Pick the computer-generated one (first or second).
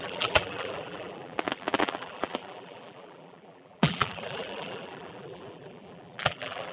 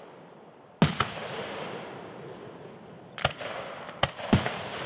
first